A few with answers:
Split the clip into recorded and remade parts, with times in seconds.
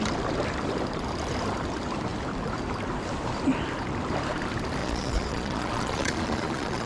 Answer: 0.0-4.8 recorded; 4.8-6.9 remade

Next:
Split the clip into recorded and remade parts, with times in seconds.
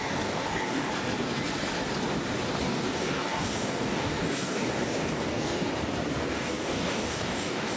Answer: 0.0-0.9 remade; 0.9-2.6 recorded; 2.6-5.7 remade; 5.7-6.3 recorded; 6.3-7.8 remade